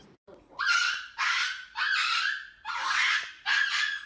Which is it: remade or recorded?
remade